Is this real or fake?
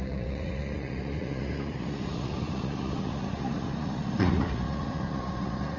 fake